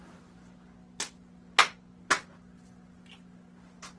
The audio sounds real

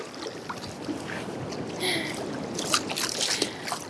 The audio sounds real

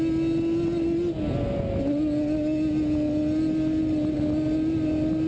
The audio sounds real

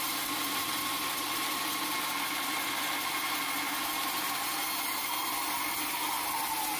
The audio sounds real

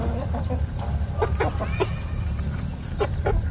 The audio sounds real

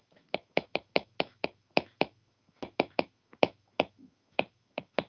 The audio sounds fake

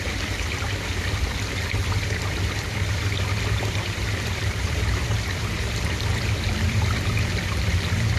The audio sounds fake